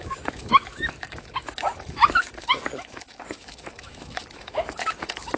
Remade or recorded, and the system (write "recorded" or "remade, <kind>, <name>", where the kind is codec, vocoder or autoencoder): remade, autoencoder, DAC-VAE